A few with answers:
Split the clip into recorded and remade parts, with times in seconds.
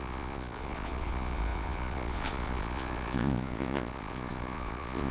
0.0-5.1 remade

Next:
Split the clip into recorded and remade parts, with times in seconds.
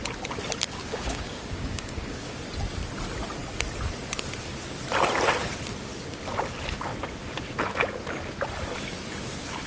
0.0-0.8 recorded; 0.8-2.4 remade; 2.4-9.7 recorded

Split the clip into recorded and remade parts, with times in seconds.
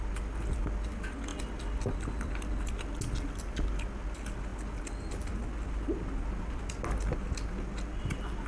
0.0-8.5 recorded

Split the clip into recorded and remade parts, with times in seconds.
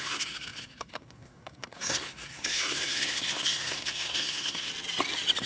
0.0-4.7 remade; 4.7-5.5 recorded